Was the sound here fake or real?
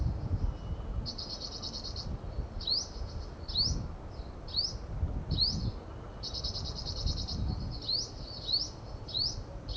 real